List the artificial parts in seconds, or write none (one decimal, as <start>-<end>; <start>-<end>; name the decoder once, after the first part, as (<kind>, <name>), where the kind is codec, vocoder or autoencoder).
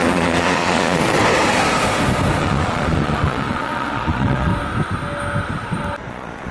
0.0-1.2 (vocoder, Vocos); 2.4-4.5; 6.1-6.5